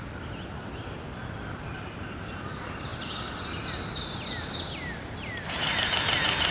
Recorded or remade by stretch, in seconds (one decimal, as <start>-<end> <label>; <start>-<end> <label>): 0.0-6.5 recorded

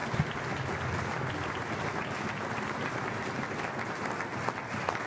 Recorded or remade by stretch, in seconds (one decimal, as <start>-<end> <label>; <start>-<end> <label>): 0.0-5.1 recorded

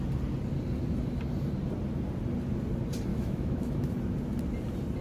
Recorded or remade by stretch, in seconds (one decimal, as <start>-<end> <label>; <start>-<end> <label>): 0.0-3.1 recorded; 3.1-3.9 remade; 3.9-5.0 recorded

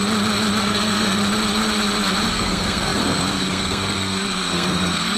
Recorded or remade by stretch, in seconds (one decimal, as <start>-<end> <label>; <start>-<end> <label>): 0.0-0.6 recorded; 0.6-1.2 remade; 1.2-2.3 recorded; 2.3-5.2 remade

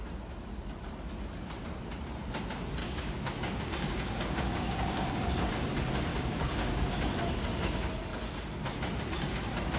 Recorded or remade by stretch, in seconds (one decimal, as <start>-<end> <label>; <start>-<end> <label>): 0.0-2.8 recorded; 2.8-5.5 remade; 5.5-6.1 recorded; 6.1-7.1 remade; 7.1-9.8 recorded

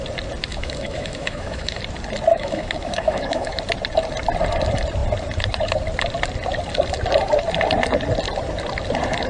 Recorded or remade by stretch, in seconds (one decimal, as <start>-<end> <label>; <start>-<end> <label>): 0.0-0.5 recorded; 0.5-1.8 remade; 1.8-2.3 recorded; 2.3-3.6 remade; 3.6-9.3 recorded